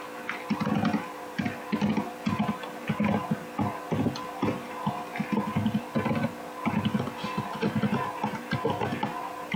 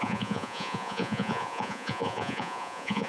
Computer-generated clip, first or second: second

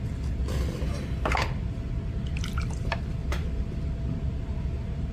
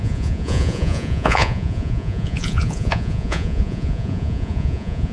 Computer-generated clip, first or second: second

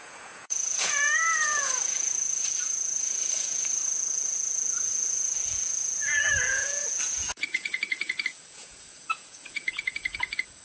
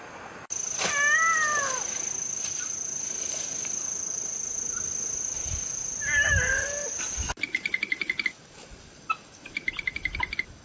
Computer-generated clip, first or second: first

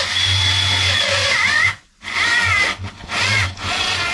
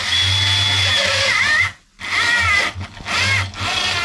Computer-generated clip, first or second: first